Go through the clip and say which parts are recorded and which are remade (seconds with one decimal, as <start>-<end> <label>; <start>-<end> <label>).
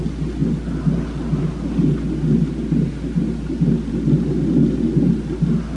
0.0-5.8 recorded